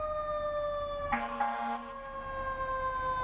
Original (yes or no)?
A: yes